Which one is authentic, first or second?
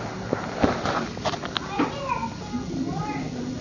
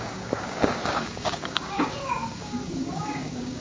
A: first